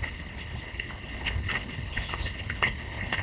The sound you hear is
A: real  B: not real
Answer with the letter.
B